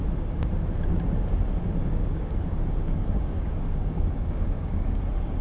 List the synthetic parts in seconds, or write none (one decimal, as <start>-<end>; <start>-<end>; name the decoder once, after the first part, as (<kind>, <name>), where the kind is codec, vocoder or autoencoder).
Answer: 1.8-5.0 (codec, DAC)